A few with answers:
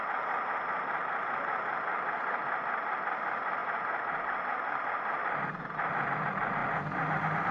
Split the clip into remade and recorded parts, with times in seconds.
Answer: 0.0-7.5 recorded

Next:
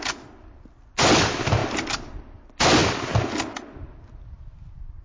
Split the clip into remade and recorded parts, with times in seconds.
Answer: 0.0-5.0 recorded

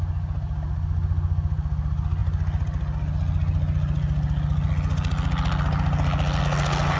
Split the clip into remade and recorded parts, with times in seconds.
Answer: 0.0-7.0 recorded

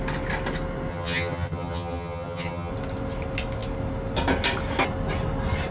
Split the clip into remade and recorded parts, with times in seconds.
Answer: 0.0-0.9 recorded; 0.9-2.7 remade; 2.7-5.7 recorded

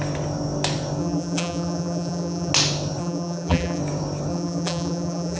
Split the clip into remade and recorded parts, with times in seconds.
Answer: 0.0-1.0 recorded; 1.0-2.5 remade; 2.5-3.0 recorded; 3.0-3.8 remade; 3.8-4.3 recorded; 4.3-5.4 remade

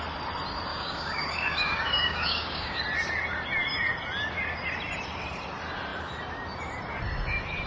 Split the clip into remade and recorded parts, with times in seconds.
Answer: 0.0-0.7 recorded; 0.7-2.8 remade; 2.8-7.7 recorded